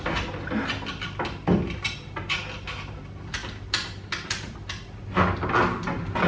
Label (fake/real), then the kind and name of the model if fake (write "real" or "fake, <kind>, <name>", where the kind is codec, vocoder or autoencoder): real